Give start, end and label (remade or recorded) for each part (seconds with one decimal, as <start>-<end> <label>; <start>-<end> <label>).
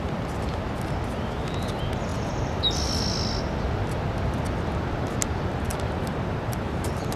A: 0.0-5.7 recorded; 5.7-6.5 remade; 6.5-7.2 recorded